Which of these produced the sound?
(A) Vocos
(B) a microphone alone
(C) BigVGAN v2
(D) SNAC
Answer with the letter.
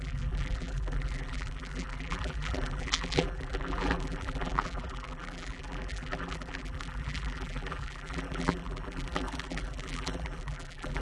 C